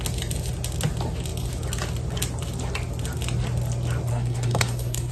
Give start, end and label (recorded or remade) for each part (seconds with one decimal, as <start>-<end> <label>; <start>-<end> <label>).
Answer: 0.0-4.1 recorded; 4.1-5.1 remade

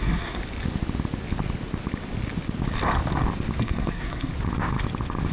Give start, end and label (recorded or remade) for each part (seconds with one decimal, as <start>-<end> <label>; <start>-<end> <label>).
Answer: 0.0-0.4 remade; 0.4-3.6 recorded; 3.6-4.3 remade; 4.3-5.3 recorded

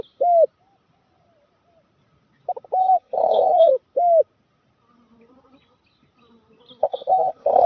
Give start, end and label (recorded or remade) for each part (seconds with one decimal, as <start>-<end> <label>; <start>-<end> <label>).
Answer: 0.0-2.8 recorded; 2.8-3.7 remade; 3.7-6.8 recorded; 6.8-7.7 remade

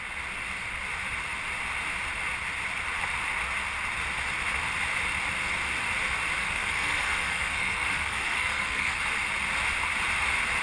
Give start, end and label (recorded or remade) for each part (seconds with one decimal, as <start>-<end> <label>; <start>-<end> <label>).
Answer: 0.0-6.4 recorded; 6.4-9.0 remade; 9.0-10.6 recorded

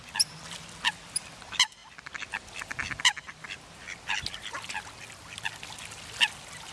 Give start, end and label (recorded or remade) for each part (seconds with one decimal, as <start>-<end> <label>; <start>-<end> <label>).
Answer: 0.0-6.7 recorded

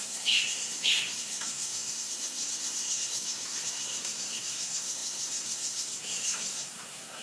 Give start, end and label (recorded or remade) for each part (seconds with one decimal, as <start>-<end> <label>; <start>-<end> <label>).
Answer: 0.0-7.2 remade

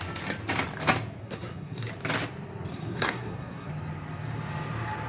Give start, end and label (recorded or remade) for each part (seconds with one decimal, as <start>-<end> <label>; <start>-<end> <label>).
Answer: 0.0-1.2 recorded; 1.2-1.9 remade; 1.9-2.7 recorded; 2.7-3.7 remade; 3.7-5.1 recorded